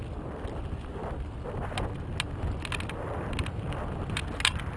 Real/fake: real